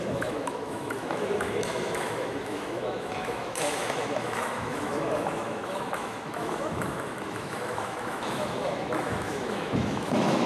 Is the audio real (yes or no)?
no